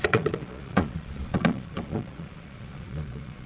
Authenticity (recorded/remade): remade